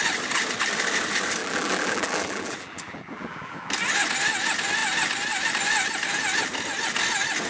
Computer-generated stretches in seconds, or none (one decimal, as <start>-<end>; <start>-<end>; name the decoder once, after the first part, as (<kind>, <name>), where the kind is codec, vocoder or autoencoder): 1.4-3.7 (vocoder, BigVGAN v2)